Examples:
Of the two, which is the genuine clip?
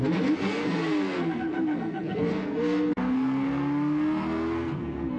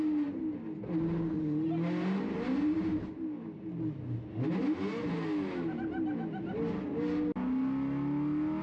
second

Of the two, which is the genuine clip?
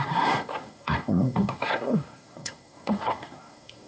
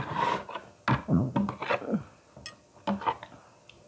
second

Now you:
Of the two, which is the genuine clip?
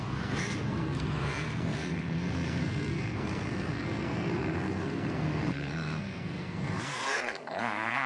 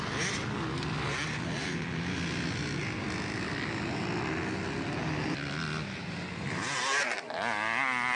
second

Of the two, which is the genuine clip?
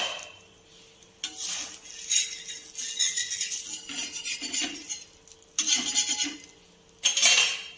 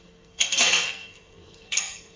first